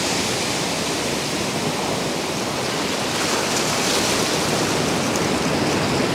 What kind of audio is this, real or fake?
real